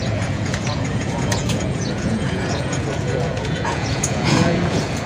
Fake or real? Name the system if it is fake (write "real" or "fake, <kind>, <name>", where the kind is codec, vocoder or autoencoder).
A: fake, vocoder, Vocos